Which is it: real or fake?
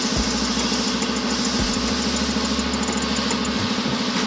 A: real